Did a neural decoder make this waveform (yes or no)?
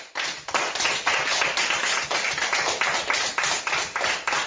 no